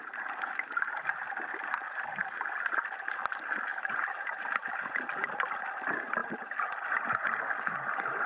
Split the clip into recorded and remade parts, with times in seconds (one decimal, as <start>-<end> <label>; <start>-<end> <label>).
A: 0.0-3.7 recorded; 3.7-4.9 remade; 4.9-8.3 recorded